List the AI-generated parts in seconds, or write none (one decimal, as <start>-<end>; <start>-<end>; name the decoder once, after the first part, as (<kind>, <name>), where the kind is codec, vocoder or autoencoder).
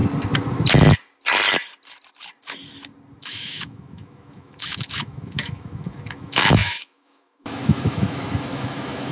3.2-9.1 (autoencoder, DAC-VAE)